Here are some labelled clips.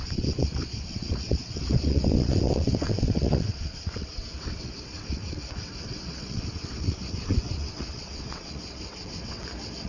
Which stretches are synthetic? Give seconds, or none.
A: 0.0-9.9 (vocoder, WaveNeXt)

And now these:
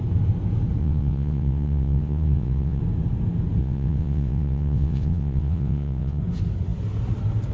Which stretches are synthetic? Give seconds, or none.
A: 0.8-2.8 (vocoder, WaveNeXt); 3.6-6.2

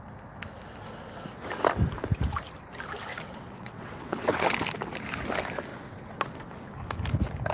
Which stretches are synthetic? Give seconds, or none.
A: 3.1-4.5 (vocoder, WaveNeXt); 5.7-6.6

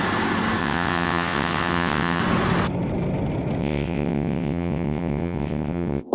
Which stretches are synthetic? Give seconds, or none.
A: 0.6-2.2 (vocoder, WaveNeXt); 3.6-6.1